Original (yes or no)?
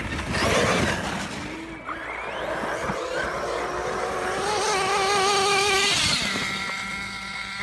yes